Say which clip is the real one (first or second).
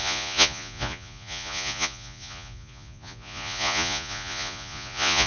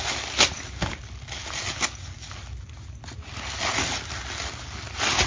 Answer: second